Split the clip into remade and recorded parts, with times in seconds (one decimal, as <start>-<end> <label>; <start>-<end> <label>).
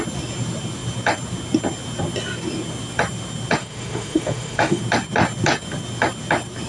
0.0-3.6 recorded; 3.6-4.8 remade; 4.8-6.7 recorded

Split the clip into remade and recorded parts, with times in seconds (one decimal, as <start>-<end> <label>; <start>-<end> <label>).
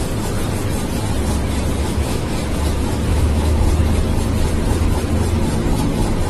0.0-1.8 recorded; 1.8-2.3 remade; 2.3-3.1 recorded; 3.1-3.6 remade; 3.6-6.3 recorded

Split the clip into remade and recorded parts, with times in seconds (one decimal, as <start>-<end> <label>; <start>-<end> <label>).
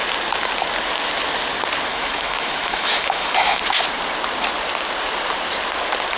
0.0-1.9 recorded; 1.9-3.6 remade; 3.6-6.2 recorded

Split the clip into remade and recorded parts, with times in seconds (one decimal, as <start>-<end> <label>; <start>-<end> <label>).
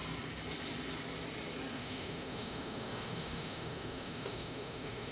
0.0-1.7 recorded; 1.7-5.1 remade